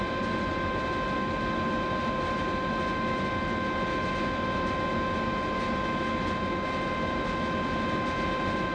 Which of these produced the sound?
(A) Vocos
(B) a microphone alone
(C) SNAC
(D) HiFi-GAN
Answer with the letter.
B